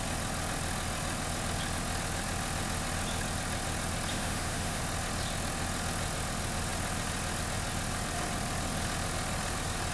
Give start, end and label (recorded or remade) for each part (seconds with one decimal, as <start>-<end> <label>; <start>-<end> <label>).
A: 0.0-4.1 recorded; 4.1-4.8 remade; 4.8-9.9 recorded